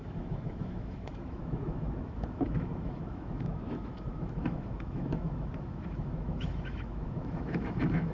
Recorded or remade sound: remade